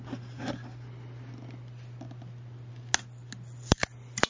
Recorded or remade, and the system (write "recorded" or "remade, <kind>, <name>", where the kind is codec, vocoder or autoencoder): recorded